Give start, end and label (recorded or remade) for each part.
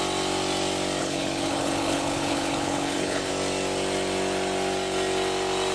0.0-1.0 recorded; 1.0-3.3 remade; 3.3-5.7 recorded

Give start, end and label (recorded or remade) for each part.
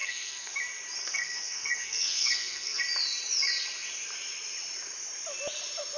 0.0-0.5 remade; 0.5-1.0 recorded; 1.0-2.8 remade; 2.8-6.0 recorded